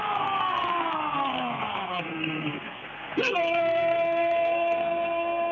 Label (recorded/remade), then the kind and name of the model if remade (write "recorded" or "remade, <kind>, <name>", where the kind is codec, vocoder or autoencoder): remade, codec, SNAC